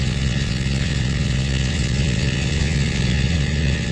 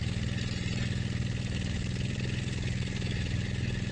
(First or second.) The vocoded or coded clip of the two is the first